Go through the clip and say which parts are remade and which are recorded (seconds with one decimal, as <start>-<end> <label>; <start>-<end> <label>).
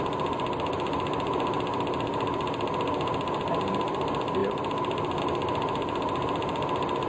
0.0-7.1 recorded